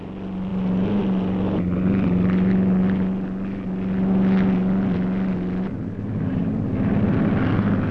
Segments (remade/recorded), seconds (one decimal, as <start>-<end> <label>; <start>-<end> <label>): 0.0-6.3 recorded; 6.3-6.9 remade; 6.9-7.9 recorded